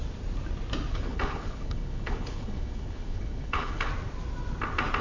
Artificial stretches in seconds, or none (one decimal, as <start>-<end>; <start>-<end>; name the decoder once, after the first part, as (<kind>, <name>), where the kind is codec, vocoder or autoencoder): 0.9-3.9 (codec, HILCodec)